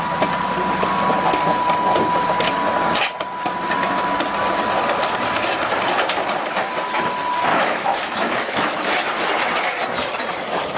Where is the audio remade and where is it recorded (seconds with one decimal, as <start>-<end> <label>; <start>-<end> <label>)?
0.0-7.5 recorded; 7.5-8.9 remade; 8.9-10.8 recorded